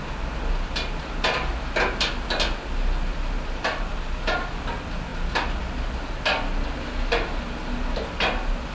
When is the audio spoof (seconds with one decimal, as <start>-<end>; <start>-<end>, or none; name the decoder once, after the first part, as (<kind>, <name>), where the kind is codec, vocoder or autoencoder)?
3.1-4.2 (vocoder, BigVGAN v2)